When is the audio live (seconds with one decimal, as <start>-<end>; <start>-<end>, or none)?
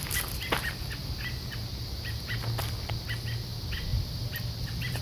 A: 0.0-1.0; 2.9-3.9; 4.5-5.0